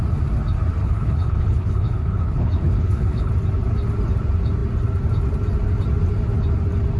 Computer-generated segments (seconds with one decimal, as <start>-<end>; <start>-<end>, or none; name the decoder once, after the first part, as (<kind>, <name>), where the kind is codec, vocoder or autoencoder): 0.8-3.3 (codec, HILCodec)